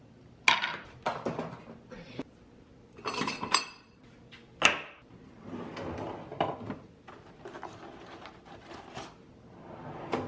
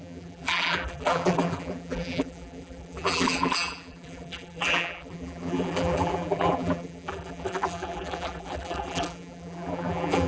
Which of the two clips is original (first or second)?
first